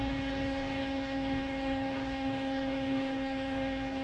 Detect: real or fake fake